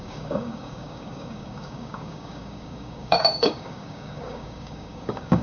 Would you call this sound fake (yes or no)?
yes